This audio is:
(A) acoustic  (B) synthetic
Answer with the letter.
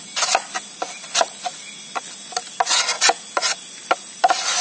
A